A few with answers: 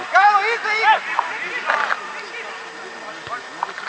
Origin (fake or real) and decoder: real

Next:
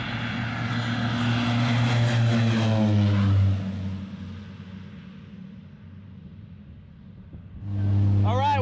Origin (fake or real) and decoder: real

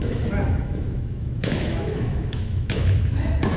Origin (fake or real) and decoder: fake, autoencoder, DAC-VAE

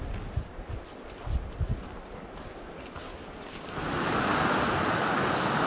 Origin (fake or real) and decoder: real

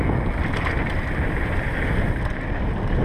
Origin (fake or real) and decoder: real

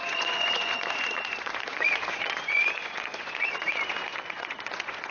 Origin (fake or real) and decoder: fake, vocoder, Vocos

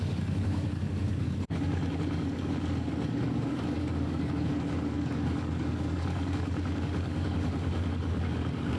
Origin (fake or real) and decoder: fake, codec, DAC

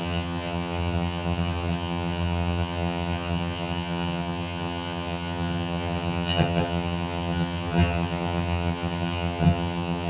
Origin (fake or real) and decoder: fake, vocoder, HiFi-GAN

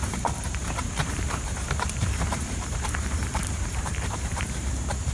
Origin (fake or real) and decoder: fake, vocoder, BigVGAN v2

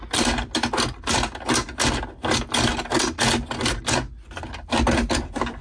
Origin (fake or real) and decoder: real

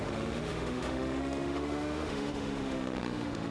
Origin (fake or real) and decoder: fake, autoencoder, DAC-VAE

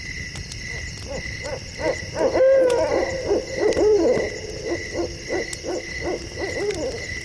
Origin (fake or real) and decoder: real